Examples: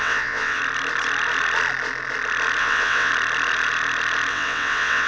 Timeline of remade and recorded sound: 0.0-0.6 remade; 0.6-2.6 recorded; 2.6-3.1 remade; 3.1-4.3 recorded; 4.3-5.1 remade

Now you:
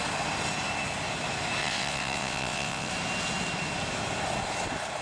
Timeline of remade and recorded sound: 0.0-1.6 recorded; 1.6-2.9 remade; 2.9-5.0 recorded

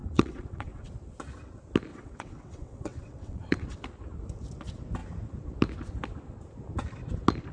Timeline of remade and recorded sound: 0.0-0.9 remade; 0.9-1.9 recorded; 1.9-3.8 remade; 3.8-7.5 recorded

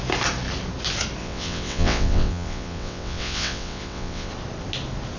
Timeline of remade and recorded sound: 0.0-1.2 recorded; 1.2-4.3 remade; 4.3-5.2 recorded

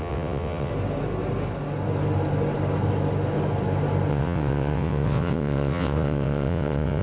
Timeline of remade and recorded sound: 0.0-0.7 remade; 0.7-4.1 recorded; 4.1-7.0 remade

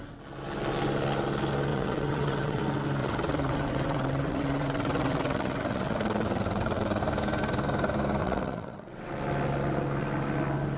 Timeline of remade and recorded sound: 0.0-1.7 recorded; 1.7-2.6 remade; 2.6-3.0 recorded; 3.0-7.0 remade; 7.0-8.2 recorded; 8.2-9.1 remade; 9.1-10.8 recorded

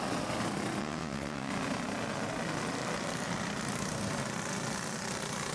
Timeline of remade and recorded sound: 0.0-0.8 recorded; 0.8-1.5 remade; 1.5-5.5 recorded